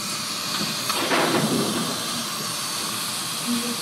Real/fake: real